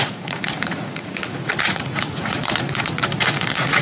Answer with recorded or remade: remade